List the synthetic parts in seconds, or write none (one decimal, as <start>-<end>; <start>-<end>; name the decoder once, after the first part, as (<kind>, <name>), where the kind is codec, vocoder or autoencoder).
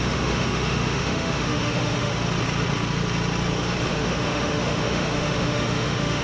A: 0.0-2.1 (autoencoder, DAC-VAE); 3.9-6.2